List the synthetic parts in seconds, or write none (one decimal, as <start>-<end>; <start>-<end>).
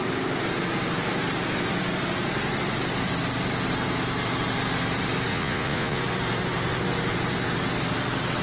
5.3-6.0